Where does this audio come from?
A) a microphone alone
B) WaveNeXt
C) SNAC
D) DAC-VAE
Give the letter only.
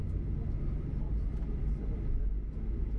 A